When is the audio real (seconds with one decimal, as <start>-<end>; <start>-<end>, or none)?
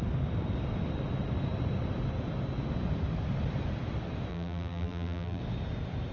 0.0-4.3; 5.4-6.1